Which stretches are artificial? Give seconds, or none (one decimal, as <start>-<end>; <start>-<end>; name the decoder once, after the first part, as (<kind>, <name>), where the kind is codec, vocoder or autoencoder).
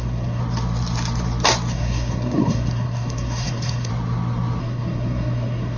0.0-0.4 (codec, SNAC); 1.7-3.9; 4.6-5.8